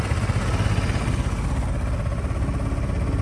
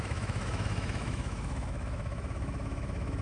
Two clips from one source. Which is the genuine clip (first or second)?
first